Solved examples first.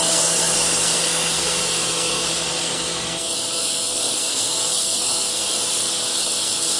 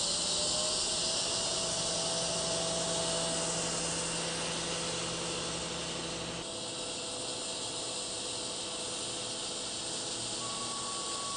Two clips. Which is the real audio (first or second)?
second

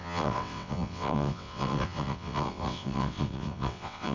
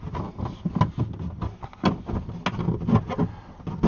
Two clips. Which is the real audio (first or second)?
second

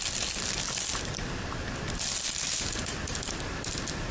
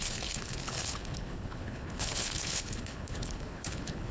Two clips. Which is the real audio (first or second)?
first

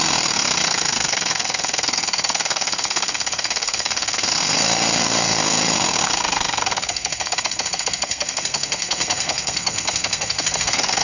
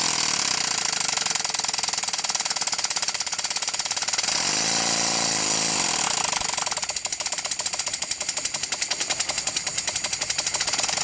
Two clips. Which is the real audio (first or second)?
second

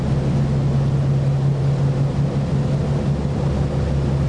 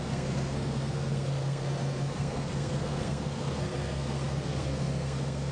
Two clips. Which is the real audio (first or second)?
first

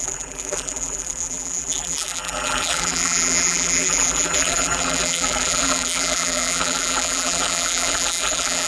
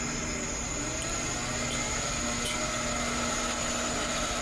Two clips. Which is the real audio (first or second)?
second